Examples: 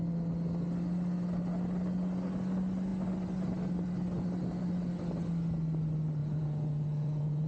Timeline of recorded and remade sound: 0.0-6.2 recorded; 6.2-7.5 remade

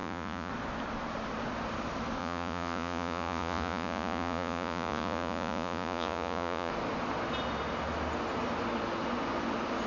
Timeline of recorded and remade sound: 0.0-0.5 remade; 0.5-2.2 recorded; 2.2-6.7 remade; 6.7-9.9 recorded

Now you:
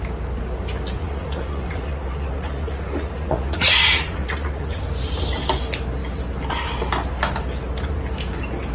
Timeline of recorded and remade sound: 0.0-1.0 recorded; 1.0-4.8 remade; 4.8-8.7 recorded

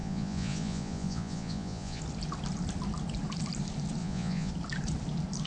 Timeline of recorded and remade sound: 0.0-2.0 remade; 2.0-4.0 recorded; 4.0-4.5 remade; 4.5-5.5 recorded

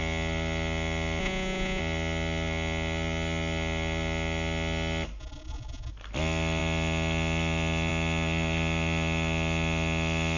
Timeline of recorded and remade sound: 0.0-1.2 recorded; 1.2-1.8 remade; 1.8-5.2 recorded; 5.2-5.9 remade; 5.9-10.4 recorded

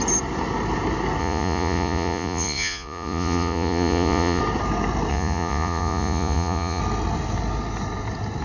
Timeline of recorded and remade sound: 0.0-1.2 recorded; 1.2-4.4 remade; 4.4-5.1 recorded; 5.1-6.8 remade; 6.8-8.4 recorded

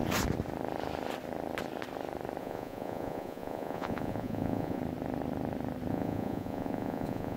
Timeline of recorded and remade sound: 0.0-2.4 recorded; 2.4-4.8 remade; 4.8-5.9 recorded; 5.9-7.4 remade

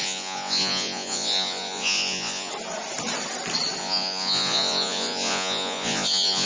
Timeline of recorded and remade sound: 0.0-2.5 remade; 2.5-3.8 recorded; 3.8-6.5 remade